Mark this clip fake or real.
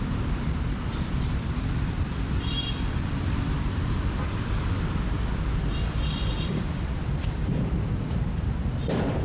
fake